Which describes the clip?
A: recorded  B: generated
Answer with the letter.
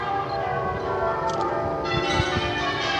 B